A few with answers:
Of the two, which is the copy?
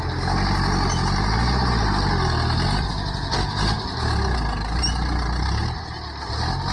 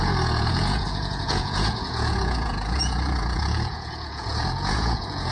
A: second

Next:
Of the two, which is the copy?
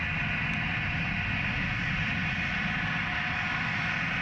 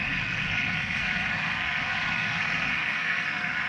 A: second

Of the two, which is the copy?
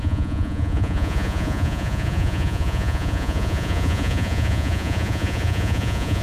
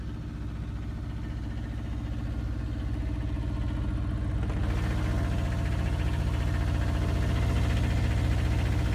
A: first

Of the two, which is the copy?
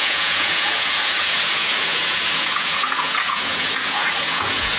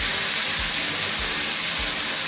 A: first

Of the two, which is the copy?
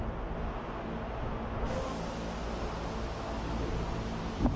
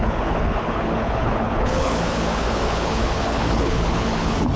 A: second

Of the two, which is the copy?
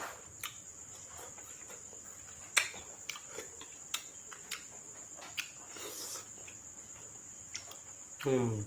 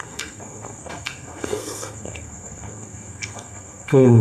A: second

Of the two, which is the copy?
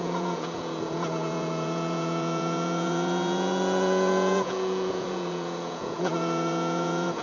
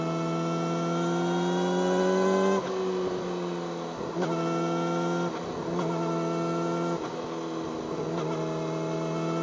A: first